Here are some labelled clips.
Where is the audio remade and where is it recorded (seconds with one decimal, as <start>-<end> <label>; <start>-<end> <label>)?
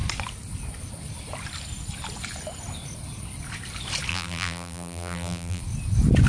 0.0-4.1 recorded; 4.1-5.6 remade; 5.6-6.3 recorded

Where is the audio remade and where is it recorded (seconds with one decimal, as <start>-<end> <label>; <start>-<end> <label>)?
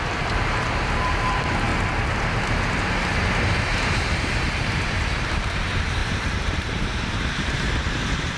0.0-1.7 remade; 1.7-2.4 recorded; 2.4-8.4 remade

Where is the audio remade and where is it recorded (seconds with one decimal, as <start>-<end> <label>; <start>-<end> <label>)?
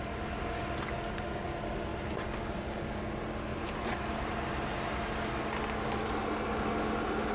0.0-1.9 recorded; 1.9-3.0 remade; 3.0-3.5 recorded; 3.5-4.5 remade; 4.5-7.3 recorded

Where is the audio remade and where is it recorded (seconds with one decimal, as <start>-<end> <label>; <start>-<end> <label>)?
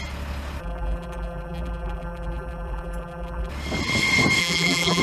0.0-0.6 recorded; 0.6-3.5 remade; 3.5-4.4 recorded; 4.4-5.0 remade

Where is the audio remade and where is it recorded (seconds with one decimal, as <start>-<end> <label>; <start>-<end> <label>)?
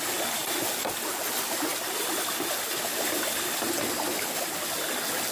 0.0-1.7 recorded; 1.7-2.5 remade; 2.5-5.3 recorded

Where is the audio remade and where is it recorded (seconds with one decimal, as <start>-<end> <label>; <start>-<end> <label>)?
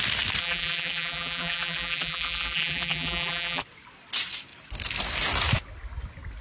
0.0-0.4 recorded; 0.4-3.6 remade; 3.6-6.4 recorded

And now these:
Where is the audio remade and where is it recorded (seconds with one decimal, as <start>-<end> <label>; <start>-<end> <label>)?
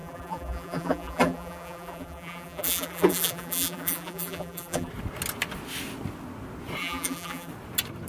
0.0-4.9 remade; 4.9-6.8 recorded; 6.8-7.5 remade; 7.5-8.1 recorded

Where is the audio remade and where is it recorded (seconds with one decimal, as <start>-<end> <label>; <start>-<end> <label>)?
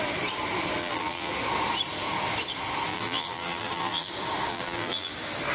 0.0-0.8 recorded; 0.8-1.3 remade; 1.3-2.9 recorded; 2.9-4.1 remade; 4.1-4.5 recorded; 4.5-5.1 remade; 5.1-5.5 recorded